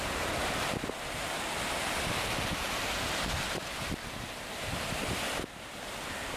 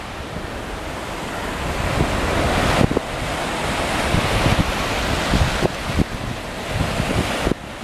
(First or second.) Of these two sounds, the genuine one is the second